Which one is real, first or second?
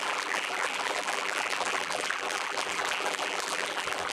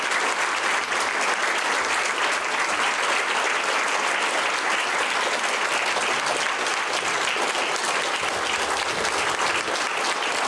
second